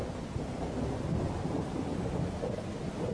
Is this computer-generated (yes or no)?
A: no